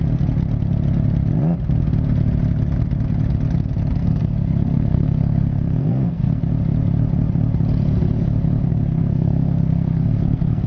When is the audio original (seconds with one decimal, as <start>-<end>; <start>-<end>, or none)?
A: 0.0-4.0; 6.4-8.7